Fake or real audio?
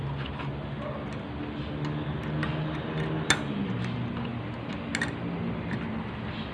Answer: real